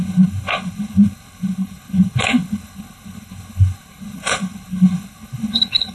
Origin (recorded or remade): remade